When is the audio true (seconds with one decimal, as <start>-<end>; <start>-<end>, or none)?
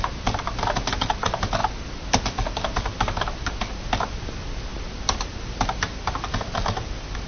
0.0-7.3